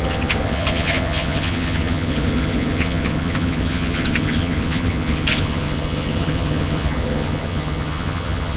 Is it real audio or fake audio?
fake